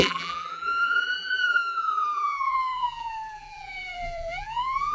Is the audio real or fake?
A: fake